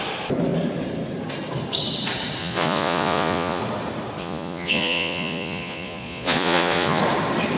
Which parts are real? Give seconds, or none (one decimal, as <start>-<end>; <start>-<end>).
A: 0.0-2.4; 3.6-4.2; 7.0-7.6